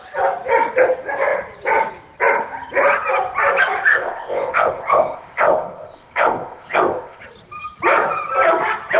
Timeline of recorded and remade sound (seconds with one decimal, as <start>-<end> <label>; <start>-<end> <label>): 0.0-3.9 recorded; 3.9-7.2 remade; 7.2-9.0 recorded